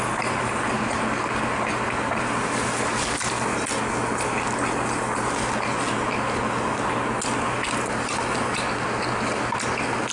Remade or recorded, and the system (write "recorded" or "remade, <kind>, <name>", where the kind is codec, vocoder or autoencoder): recorded